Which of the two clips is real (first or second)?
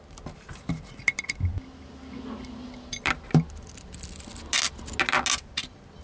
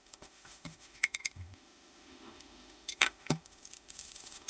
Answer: first